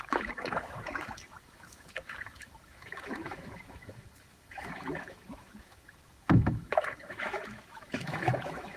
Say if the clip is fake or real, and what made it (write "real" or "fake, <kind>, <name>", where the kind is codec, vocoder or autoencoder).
fake, autoencoder, DAC-VAE